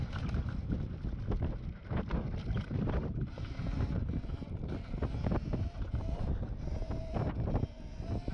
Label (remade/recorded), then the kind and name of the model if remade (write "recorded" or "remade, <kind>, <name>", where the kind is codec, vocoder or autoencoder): remade, vocoder, BigVGAN v2